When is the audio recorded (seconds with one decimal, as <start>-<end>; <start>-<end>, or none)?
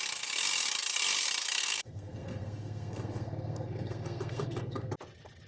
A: 0.0-1.6; 4.9-5.5